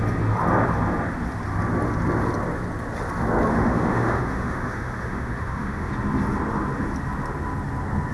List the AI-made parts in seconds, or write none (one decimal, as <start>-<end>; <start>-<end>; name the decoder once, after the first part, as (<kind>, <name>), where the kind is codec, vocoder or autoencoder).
3.5-5.9 (autoencoder, DAC-VAE)